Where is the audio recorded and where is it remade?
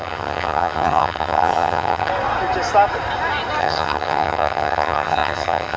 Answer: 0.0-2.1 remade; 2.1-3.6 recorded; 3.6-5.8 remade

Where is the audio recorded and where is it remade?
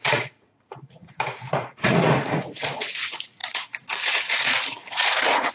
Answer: 0.0-5.5 remade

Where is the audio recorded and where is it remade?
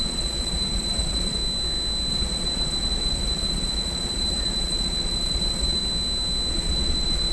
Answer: 0.0-1.4 remade; 1.4-2.1 recorded; 2.1-5.8 remade; 5.8-6.5 recorded; 6.5-7.3 remade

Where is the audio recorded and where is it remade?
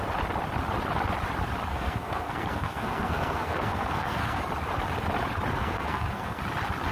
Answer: 0.0-1.7 recorded; 1.7-4.4 remade; 4.4-5.6 recorded; 5.6-6.4 remade; 6.4-6.9 recorded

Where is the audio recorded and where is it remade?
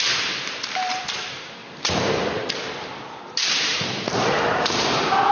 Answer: 0.0-5.3 remade